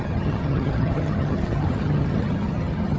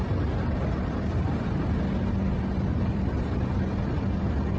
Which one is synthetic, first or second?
first